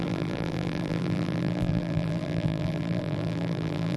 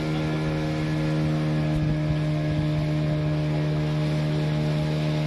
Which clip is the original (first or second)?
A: second